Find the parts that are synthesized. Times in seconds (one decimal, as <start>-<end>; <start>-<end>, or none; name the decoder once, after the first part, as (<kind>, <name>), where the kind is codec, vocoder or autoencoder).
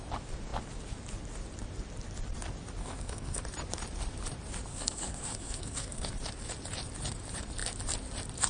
2.8-3.4 (codec, SNAC); 4.7-6.1